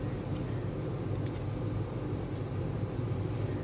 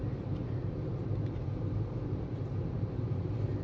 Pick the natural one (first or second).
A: first